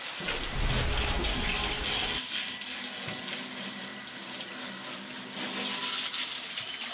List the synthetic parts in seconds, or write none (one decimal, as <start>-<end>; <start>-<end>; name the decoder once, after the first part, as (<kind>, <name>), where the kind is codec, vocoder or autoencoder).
none